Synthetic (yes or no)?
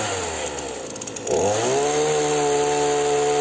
no